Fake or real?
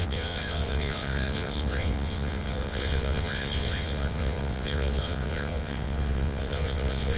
fake